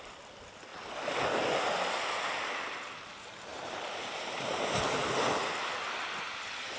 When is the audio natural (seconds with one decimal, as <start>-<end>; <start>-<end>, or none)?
0.0-3.5; 5.1-6.8